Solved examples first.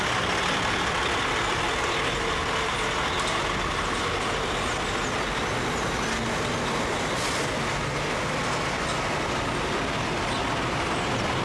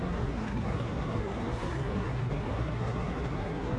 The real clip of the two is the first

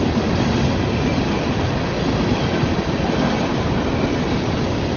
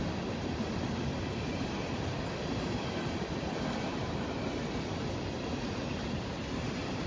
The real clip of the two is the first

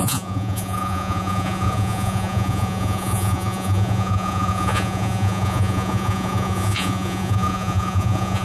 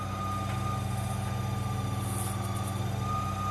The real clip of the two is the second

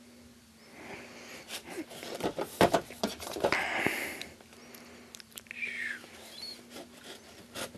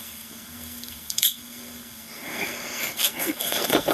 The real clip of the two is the first